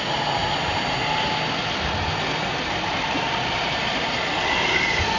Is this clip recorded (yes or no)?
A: yes